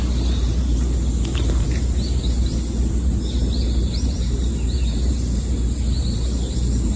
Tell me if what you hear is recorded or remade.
remade